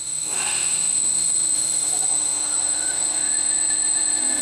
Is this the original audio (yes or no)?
no